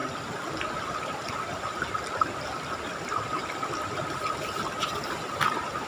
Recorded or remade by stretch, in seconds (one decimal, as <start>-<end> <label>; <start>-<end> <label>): 0.0-5.9 recorded